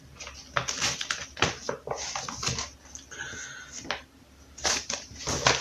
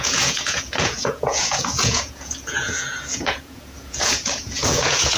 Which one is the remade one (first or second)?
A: second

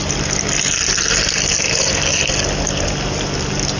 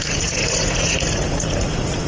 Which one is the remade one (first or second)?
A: second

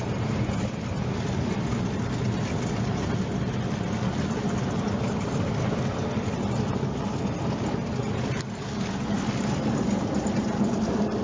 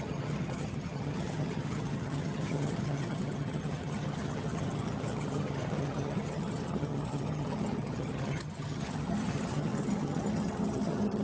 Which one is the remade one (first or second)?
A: second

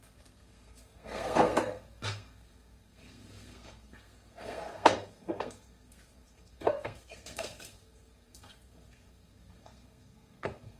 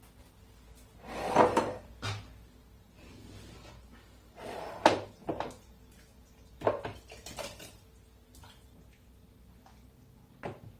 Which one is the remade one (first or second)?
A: first